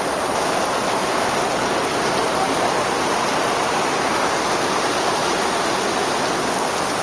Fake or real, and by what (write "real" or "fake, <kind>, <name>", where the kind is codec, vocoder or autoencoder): real